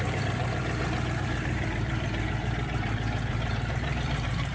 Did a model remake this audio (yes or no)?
yes